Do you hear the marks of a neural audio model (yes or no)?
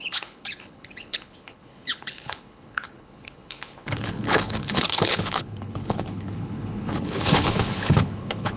yes